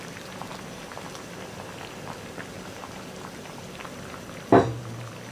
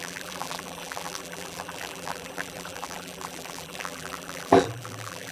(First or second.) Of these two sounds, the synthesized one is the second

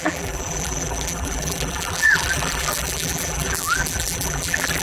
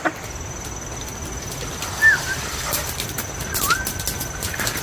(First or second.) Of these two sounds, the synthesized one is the first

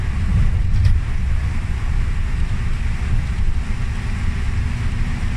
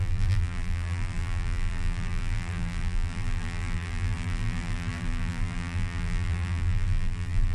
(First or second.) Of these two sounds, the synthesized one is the second